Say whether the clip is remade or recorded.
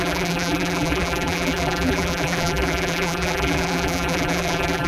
remade